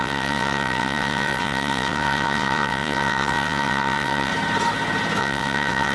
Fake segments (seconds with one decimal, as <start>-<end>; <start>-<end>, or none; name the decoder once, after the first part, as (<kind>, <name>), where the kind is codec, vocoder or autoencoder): 0.0-4.3 (vocoder, WaveNeXt); 5.2-5.9